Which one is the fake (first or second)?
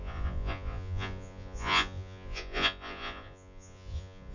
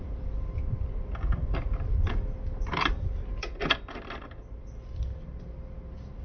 first